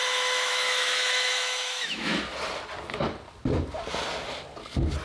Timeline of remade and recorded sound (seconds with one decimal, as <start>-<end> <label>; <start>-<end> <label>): 0.0-2.1 remade; 2.1-5.0 recorded